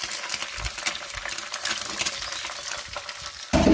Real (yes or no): yes